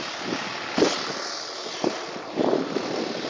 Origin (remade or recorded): recorded